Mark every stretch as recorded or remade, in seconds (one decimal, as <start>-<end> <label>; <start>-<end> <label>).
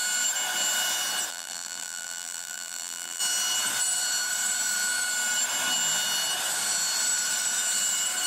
0.0-1.3 recorded; 1.3-3.2 remade; 3.2-8.3 recorded